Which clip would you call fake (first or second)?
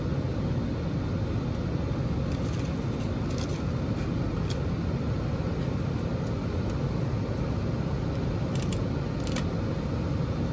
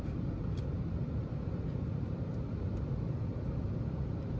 second